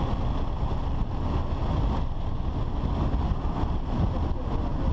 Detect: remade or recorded recorded